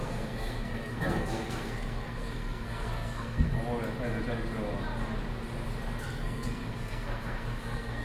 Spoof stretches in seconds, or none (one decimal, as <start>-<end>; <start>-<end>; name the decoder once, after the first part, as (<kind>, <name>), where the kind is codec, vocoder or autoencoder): 0.0-3.6 (codec, SNAC); 6.0-8.0